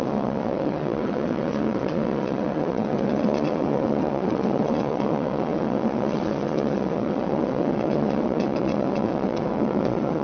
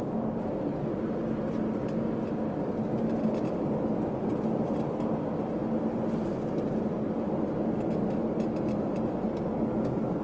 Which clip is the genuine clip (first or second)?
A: second